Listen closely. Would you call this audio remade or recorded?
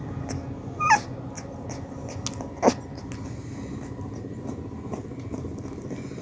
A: recorded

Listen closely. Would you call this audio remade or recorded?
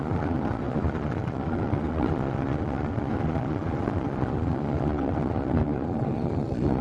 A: remade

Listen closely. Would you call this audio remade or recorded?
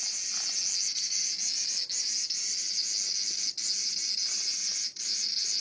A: recorded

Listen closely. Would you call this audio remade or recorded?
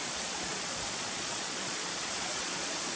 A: remade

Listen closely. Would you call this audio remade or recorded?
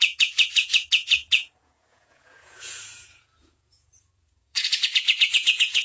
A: remade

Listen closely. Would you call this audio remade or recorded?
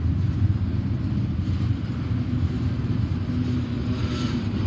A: recorded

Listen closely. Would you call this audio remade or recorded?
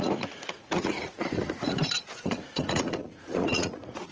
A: remade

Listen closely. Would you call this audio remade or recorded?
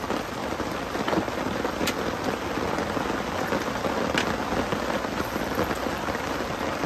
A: recorded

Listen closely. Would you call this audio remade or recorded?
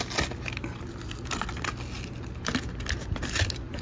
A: recorded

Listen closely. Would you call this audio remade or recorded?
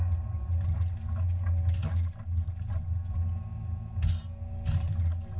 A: recorded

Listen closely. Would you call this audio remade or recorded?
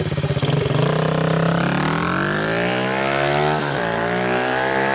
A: recorded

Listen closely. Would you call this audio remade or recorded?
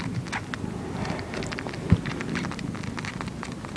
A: recorded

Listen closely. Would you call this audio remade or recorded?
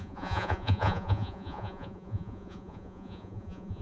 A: remade